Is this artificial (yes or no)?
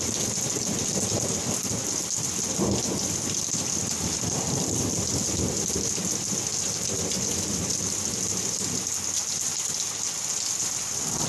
no